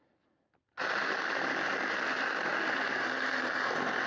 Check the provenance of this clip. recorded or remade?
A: recorded